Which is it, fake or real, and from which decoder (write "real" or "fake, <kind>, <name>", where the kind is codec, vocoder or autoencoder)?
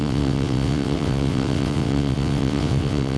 fake, vocoder, WaveNeXt